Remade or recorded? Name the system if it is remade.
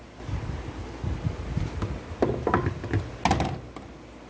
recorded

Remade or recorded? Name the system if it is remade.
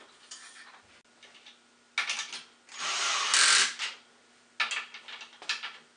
recorded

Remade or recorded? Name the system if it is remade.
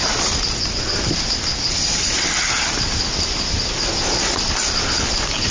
recorded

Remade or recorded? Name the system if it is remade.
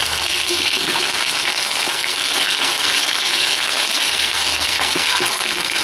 remade, codec, SNAC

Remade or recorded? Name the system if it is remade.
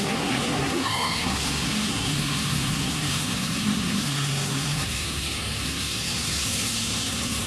remade, codec, SNAC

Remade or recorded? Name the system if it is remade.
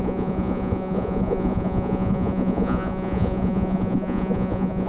remade, vocoder, Vocos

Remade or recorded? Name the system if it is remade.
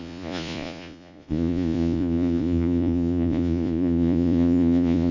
remade, vocoder, Vocos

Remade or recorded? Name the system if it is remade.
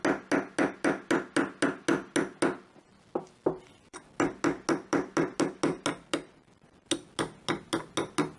recorded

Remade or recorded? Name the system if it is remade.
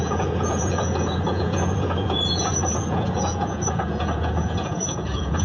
remade, vocoder, Vocos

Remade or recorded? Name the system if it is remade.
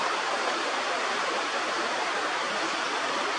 remade, vocoder, BigVGAN v2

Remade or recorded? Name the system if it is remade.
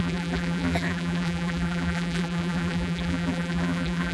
remade, vocoder, BigVGAN v2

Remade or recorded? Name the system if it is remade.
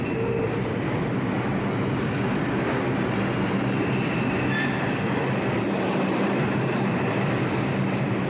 recorded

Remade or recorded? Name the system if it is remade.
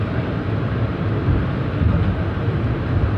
recorded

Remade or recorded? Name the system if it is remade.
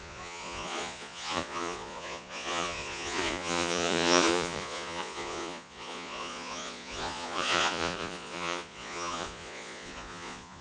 remade, vocoder, Vocos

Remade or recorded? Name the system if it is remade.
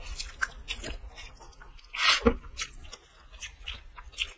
recorded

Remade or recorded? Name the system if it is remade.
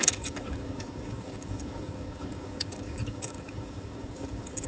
remade, codec, DAC